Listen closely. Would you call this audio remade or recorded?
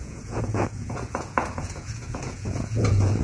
remade